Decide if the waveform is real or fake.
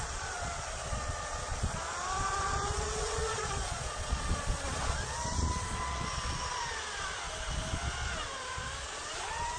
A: fake